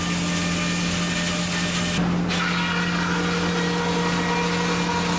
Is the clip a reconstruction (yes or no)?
no